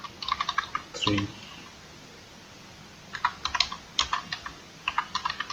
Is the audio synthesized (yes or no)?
no